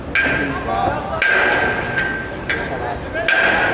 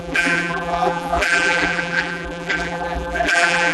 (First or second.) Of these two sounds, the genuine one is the first